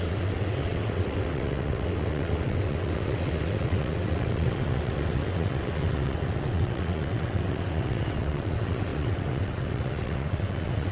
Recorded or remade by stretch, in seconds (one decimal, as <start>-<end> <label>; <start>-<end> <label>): 0.0-10.9 remade